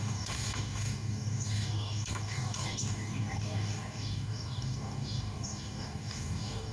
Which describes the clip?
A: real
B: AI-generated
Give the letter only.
B